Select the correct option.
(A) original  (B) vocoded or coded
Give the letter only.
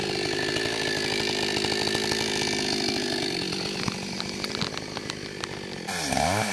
A